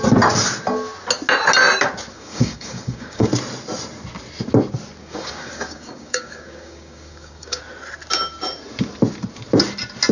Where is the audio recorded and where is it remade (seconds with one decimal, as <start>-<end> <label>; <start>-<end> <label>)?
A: 0.0-2.1 recorded; 2.1-3.3 remade; 3.3-5.0 recorded; 5.0-7.6 remade; 7.6-10.1 recorded